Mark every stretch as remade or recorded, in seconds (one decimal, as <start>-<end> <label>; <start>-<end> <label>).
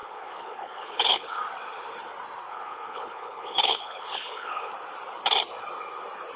0.0-1.4 remade; 1.4-2.5 recorded; 2.5-4.7 remade; 4.7-6.4 recorded